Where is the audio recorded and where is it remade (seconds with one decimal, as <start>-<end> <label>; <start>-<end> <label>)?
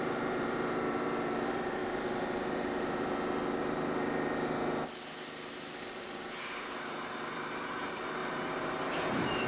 0.0-1.8 remade; 1.8-5.9 recorded; 5.9-9.5 remade